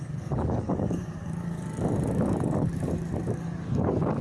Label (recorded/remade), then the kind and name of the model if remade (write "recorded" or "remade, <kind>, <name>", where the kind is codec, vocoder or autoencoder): remade, codec, DAC